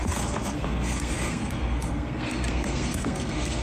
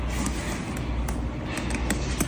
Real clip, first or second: second